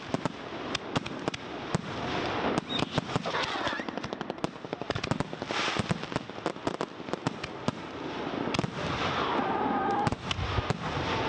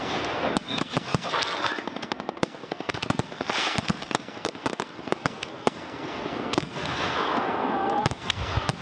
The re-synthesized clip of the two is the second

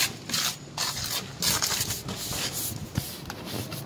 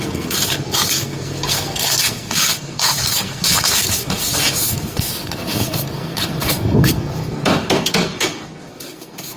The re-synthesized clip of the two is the second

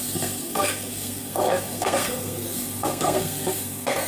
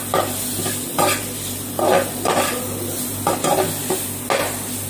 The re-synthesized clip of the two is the first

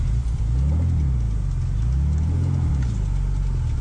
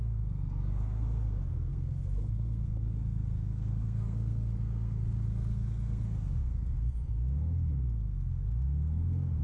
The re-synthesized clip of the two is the second